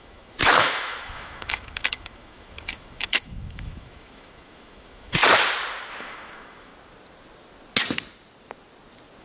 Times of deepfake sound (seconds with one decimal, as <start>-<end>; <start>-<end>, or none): 0.0-5.2; 6.0-6.7